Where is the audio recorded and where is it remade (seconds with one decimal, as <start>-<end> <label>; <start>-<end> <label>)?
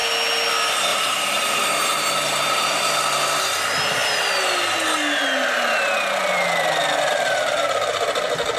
0.0-0.9 recorded; 0.9-3.0 remade; 3.0-8.6 recorded